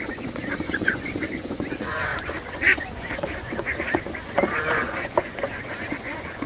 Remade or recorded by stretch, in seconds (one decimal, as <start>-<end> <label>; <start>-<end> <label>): 0.0-6.5 remade